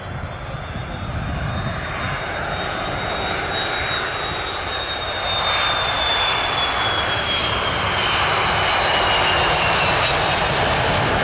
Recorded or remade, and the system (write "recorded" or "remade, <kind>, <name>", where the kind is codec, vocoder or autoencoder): recorded